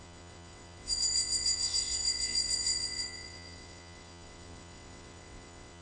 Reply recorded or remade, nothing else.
remade